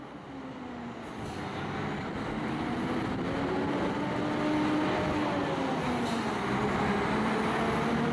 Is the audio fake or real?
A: real